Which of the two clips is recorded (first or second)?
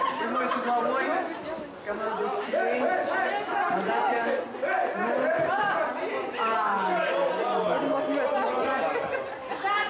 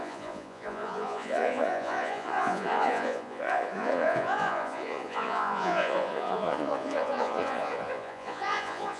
first